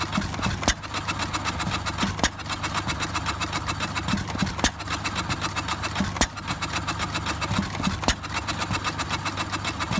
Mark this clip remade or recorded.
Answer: recorded